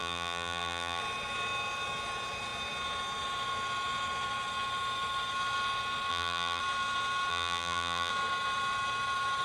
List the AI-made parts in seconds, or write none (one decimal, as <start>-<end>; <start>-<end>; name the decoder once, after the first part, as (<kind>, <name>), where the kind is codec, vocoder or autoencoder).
0.0-1.0 (vocoder, BigVGAN v2); 6.1-6.6; 7.3-8.1

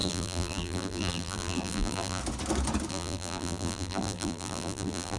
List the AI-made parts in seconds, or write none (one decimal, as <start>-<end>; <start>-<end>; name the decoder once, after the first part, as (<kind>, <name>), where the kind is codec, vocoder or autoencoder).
0.0-2.2 (vocoder, BigVGAN v2); 2.9-5.2

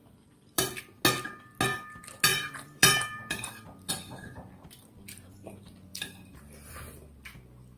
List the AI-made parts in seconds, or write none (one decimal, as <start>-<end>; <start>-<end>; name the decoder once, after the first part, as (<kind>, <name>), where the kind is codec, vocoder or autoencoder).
0.0-1.0 (vocoder, BigVGAN v2); 2.3-3.9; 5.9-6.4